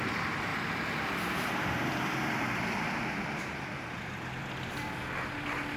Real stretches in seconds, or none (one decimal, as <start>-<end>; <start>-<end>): 0.0-0.5; 3.4-4.4; 5.0-5.8